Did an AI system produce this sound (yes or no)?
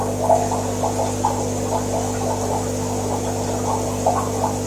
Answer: no